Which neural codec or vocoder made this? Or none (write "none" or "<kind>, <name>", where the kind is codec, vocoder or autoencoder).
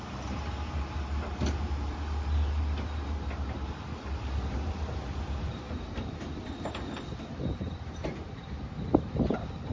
none